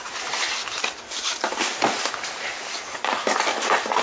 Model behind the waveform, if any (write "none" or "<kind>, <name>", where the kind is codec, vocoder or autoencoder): none